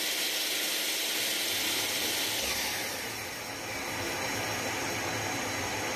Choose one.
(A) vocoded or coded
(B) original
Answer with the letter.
B